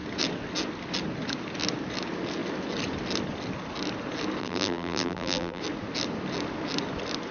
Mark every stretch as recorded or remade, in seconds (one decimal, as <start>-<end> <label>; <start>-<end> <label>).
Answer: 0.0-4.4 recorded; 4.4-5.6 remade; 5.6-7.3 recorded

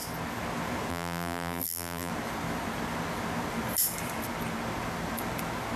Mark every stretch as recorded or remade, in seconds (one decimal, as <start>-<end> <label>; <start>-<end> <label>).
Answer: 0.0-0.9 recorded; 0.9-2.1 remade; 2.1-5.8 recorded

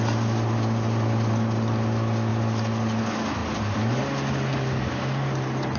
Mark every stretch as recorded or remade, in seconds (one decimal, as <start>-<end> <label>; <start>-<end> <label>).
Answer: 0.0-3.4 recorded; 3.4-4.0 remade; 4.0-5.8 recorded

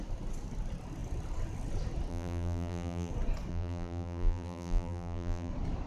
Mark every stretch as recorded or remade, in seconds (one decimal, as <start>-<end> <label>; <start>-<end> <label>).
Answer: 0.0-2.1 recorded; 2.1-3.1 remade; 3.1-3.5 recorded; 3.5-5.5 remade; 5.5-5.9 recorded

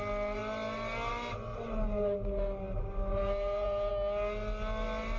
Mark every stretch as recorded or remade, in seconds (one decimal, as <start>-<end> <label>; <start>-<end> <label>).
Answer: 0.0-1.5 recorded; 1.5-3.9 remade; 3.9-5.2 recorded

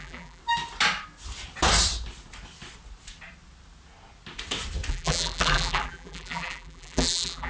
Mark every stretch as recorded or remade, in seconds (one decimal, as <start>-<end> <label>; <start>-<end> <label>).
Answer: 0.0-0.4 remade; 0.4-4.9 recorded; 4.9-7.5 remade

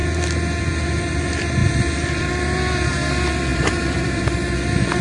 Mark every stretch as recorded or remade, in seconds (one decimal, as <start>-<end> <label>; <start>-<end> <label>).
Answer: 0.0-1.6 recorded; 1.6-2.3 remade; 2.3-3.5 recorded; 3.5-4.2 remade; 4.2-5.0 recorded